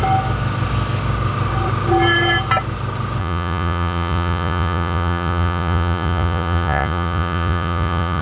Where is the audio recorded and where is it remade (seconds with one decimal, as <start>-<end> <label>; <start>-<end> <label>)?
0.0-3.2 recorded; 3.2-8.2 remade